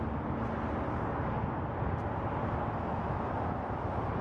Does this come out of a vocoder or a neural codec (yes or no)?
no